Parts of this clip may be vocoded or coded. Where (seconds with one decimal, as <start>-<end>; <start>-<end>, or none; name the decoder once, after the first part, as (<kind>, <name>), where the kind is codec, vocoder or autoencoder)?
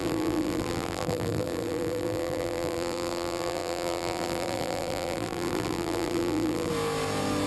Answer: 0.0-6.7 (vocoder, BigVGAN v2)